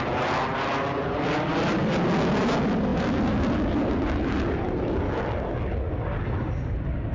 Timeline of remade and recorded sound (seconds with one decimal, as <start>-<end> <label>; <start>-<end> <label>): 0.0-7.1 recorded